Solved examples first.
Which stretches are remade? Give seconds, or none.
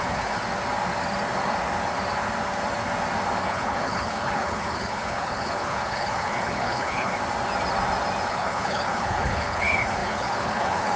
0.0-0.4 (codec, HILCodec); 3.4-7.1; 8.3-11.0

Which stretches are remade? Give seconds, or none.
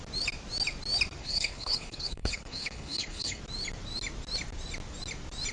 1.2-3.4 (codec, HILCodec)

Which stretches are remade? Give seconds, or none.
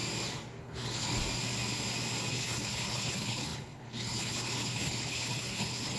0.6-1.1 (codec, HILCodec); 2.3-6.0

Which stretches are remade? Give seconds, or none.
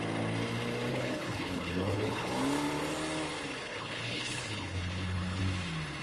0.9-2.3 (codec, HILCodec); 3.6-5.4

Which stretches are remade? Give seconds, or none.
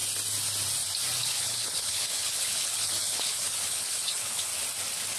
1.2-4.5 (codec, HILCodec)